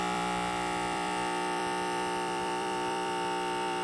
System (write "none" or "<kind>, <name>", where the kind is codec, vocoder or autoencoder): vocoder, BigVGAN v2